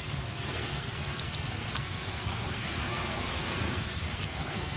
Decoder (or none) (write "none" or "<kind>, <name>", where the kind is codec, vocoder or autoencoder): codec, SNAC